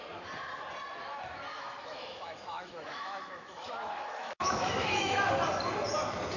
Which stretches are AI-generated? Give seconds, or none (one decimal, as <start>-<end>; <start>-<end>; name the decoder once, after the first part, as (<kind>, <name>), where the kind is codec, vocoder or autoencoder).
1.5-5.3 (autoencoder, DAC-VAE)